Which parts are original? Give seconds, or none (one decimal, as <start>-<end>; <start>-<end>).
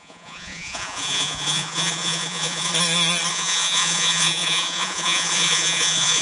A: 2.7-3.3